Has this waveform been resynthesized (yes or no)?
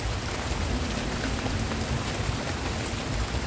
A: yes